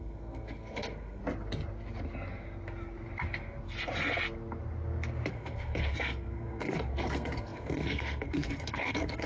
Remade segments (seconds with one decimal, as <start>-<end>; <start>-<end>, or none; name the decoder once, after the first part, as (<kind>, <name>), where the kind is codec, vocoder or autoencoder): 0.0-1.2 (codec, SNAC); 5.3-9.3

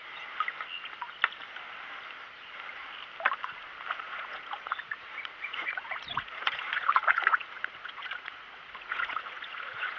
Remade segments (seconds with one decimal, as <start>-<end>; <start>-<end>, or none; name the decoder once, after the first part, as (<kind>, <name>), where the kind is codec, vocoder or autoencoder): 4.0-10.0 (vocoder, Vocos)

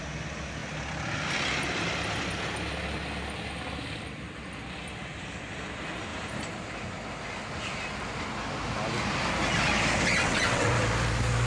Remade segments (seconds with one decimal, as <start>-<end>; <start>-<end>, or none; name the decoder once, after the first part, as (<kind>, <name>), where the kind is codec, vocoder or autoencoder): 10.1-10.7 (vocoder, WaveNeXt)

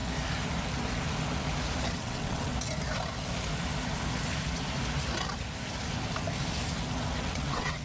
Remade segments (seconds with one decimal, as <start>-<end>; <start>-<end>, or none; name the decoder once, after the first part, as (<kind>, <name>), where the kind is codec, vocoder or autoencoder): 1.9-2.5 (vocoder, WaveNeXt); 7.2-7.8

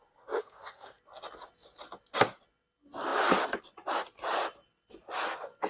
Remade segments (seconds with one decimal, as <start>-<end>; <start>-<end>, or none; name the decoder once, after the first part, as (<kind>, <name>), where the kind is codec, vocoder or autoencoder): 0.4-1.0 (codec, SNAC)

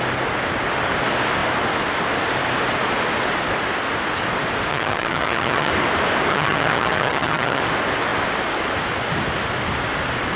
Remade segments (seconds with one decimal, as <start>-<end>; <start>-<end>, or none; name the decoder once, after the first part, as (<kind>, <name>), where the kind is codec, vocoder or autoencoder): 4.7-5.7 (vocoder, HiFi-GAN); 6.3-7.6

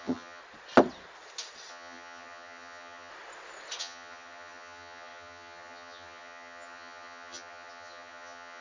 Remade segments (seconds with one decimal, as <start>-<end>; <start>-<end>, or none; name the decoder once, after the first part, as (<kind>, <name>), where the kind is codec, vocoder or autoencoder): 0.0-0.4 (vocoder, HiFi-GAN); 1.7-3.1; 3.8-8.6